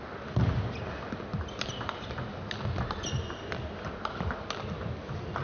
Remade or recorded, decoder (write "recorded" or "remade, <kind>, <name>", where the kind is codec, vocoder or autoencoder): recorded